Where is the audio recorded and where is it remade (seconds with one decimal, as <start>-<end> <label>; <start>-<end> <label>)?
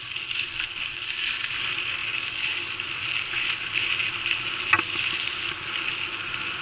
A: 0.0-6.6 recorded